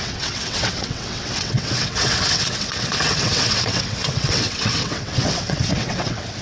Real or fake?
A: fake